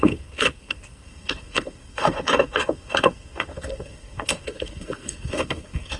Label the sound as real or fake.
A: fake